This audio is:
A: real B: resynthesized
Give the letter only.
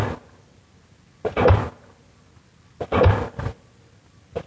A